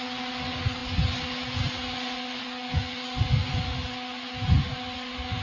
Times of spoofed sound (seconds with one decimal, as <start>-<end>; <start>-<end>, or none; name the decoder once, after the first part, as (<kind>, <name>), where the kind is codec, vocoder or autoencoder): none